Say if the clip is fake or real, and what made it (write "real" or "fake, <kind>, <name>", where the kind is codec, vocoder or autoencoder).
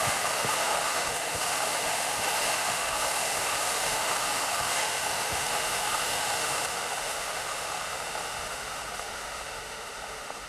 fake, autoencoder, DAC-VAE